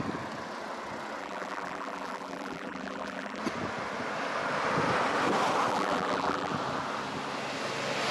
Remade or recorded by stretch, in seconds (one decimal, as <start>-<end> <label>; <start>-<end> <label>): 0.0-1.2 recorded; 1.2-3.4 remade; 3.4-5.7 recorded; 5.7-6.5 remade; 6.5-8.1 recorded